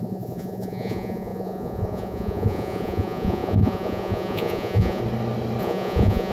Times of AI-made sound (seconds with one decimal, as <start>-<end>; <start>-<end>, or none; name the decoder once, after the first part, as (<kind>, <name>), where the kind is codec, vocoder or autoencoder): 0.0-5.0 (vocoder, Vocos); 5.6-6.3